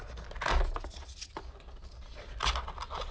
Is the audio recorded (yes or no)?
yes